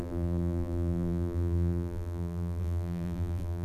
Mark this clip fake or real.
fake